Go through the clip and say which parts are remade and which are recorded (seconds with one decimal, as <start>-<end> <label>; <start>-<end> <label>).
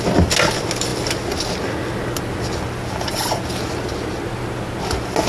0.0-5.3 recorded